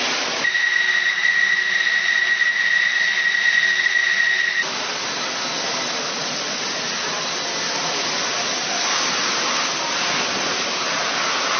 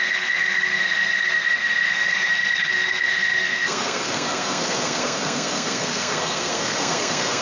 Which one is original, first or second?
first